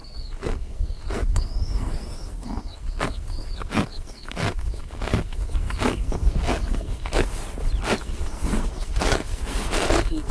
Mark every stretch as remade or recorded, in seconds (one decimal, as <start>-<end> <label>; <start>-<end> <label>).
0.0-7.4 remade; 7.4-8.0 recorded; 8.0-10.3 remade